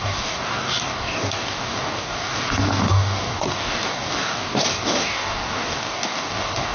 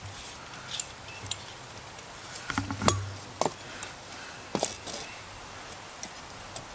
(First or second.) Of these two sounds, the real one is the second